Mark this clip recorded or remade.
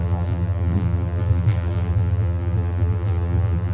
remade